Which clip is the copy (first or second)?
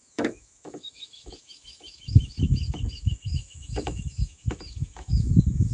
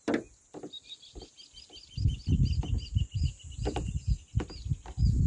first